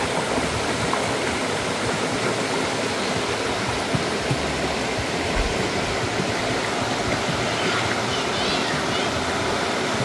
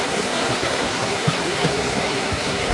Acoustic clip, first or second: first